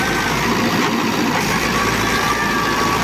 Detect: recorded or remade remade